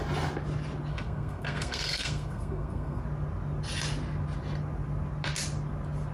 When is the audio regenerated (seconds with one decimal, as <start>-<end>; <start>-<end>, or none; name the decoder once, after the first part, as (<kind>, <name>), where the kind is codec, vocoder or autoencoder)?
0.9-3.0 (codec, SNAC)